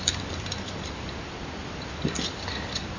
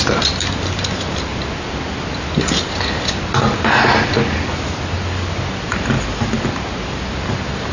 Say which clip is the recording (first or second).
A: second